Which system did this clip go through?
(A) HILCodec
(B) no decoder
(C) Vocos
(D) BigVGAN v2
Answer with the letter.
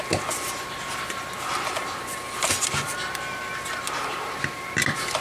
B